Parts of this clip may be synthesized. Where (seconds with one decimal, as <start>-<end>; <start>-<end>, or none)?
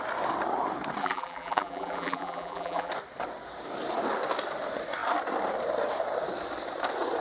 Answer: 1.0-2.9